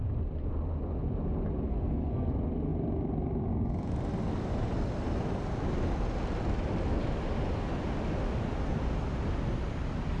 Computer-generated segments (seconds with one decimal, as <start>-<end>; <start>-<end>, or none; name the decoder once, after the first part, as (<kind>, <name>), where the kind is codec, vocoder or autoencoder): 1.7-2.3 (codec, SNAC)